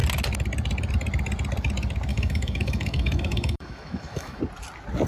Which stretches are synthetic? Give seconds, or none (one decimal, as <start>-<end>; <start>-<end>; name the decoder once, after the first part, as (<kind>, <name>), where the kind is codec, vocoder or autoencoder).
2.1-4.4 (autoencoder, DAC-VAE)